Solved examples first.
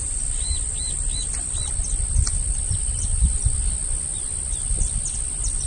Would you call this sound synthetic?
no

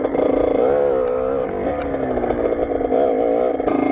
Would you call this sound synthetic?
no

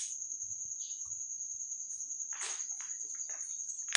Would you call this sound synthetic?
no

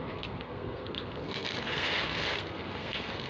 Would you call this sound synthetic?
yes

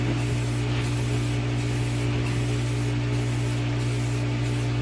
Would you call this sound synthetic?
no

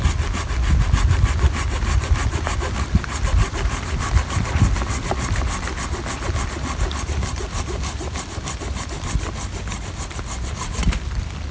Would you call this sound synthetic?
no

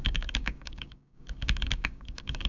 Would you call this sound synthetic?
yes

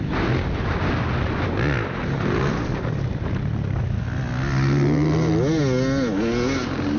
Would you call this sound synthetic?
no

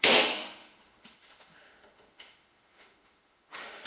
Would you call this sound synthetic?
yes